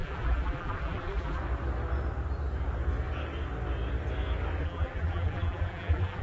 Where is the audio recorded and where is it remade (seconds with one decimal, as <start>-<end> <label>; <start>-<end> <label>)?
0.0-1.4 remade; 1.4-4.6 recorded; 4.6-6.2 remade